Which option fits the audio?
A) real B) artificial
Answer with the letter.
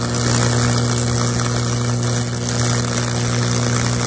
A